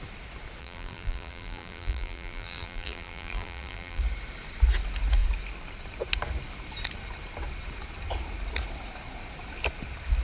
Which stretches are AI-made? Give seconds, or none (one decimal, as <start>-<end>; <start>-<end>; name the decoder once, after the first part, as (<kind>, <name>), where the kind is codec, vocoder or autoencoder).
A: 0.6-4.0 (vocoder, BigVGAN v2)